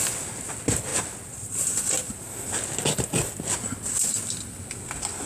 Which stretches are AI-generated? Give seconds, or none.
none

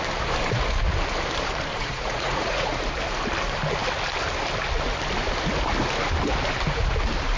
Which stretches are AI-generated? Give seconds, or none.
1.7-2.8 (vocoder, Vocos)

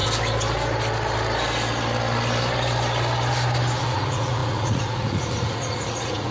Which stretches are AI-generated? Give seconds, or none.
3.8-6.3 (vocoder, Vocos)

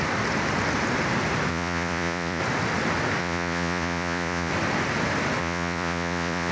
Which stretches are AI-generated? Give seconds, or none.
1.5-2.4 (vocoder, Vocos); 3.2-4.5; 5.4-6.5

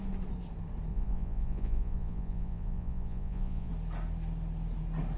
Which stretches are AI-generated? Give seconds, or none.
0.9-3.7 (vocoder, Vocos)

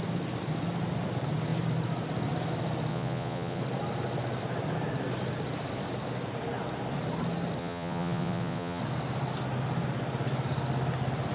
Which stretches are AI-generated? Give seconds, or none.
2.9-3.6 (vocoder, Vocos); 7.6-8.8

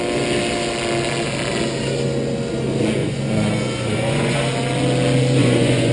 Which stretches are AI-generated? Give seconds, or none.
3.0-4.4 (vocoder, Vocos); 5.4-5.9

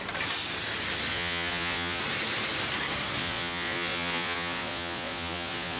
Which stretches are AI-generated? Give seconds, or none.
1.1-2.0 (vocoder, Vocos); 3.2-5.8